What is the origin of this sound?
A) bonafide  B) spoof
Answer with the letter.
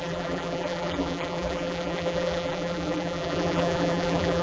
B